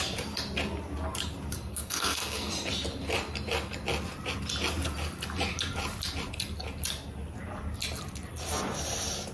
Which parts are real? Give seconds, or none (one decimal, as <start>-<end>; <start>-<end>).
0.0-1.7; 2.5-9.3